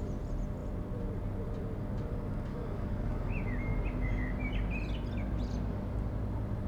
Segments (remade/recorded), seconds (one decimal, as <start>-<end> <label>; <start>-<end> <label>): 0.0-2.5 recorded; 2.5-3.3 remade; 3.3-6.7 recorded